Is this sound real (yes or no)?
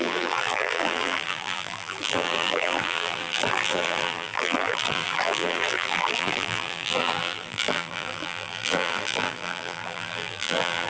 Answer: no